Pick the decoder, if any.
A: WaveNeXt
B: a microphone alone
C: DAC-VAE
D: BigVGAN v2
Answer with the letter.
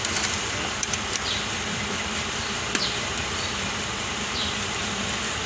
D